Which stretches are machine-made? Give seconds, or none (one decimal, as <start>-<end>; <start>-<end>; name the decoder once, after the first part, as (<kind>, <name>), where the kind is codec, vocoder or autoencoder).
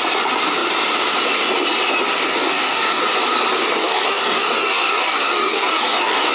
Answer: 2.1-3.0 (codec, DAC); 3.8-6.3